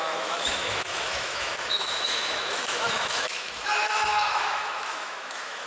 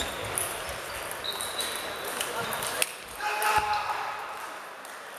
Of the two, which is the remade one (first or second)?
first